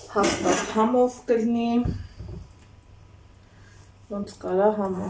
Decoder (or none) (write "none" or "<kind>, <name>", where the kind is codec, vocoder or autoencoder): none